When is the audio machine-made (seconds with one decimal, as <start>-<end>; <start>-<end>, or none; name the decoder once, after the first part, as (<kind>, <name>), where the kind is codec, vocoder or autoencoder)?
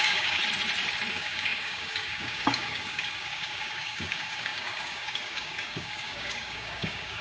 0.0-0.4 (codec, DAC); 1.1-7.2